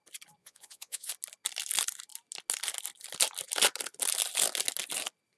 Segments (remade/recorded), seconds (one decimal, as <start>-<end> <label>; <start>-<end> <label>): 0.0-0.4 recorded; 0.4-1.1 remade; 1.1-5.4 recorded